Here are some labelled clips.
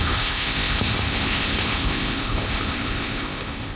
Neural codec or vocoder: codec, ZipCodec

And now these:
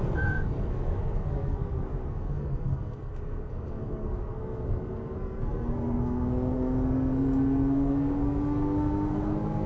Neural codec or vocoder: codec, SNAC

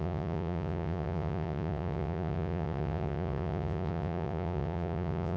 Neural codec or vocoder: vocoder, Vocos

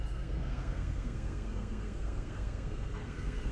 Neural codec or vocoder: codec, SNAC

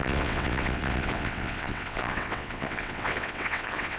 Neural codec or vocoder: vocoder, WaveNeXt